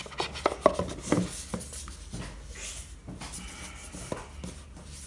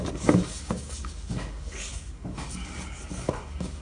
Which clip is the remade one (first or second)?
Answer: second